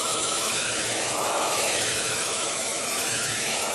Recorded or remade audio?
remade